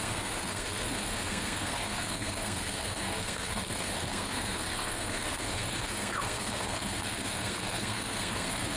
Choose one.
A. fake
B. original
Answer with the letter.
A